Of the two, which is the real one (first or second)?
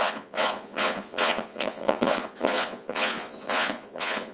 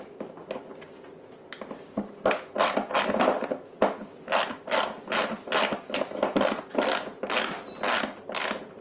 second